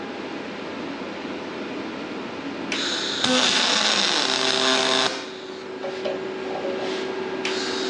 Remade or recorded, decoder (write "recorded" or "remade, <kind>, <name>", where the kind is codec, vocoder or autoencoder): recorded